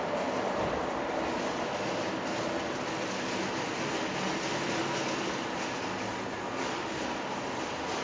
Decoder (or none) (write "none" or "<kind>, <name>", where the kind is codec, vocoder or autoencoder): none